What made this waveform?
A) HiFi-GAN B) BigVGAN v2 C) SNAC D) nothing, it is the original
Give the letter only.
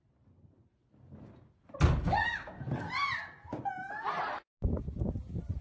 D